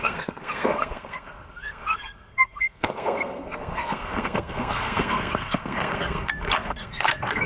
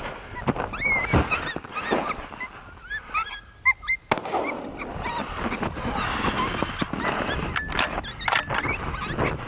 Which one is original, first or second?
second